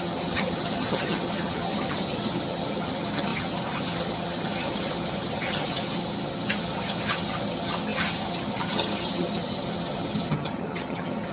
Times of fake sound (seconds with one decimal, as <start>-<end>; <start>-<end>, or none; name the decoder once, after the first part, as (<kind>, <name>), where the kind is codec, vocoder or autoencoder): 0.0-11.3 (vocoder, HiFi-GAN)